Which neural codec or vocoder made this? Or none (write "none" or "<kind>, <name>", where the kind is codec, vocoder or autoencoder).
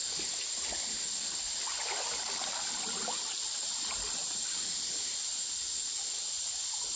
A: none